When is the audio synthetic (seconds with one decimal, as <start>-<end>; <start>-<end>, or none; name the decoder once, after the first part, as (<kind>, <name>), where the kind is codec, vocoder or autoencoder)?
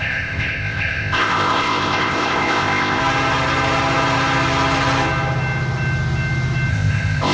0.0-3.0 (codec, ZipCodec); 6.7-7.3